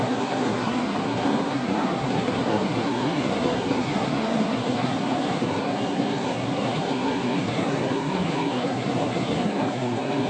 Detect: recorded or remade remade